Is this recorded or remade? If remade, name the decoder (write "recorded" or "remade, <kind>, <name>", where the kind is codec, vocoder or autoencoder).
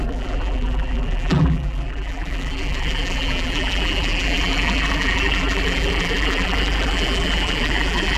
remade, vocoder, BigVGAN v2